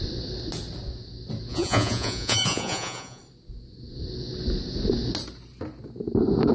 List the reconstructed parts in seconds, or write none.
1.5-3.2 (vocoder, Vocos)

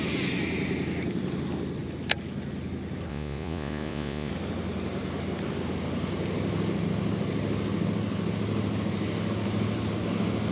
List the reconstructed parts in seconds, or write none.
3.1-4.3 (vocoder, Vocos)

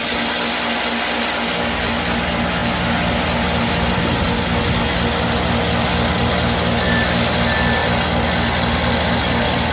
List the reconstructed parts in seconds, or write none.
none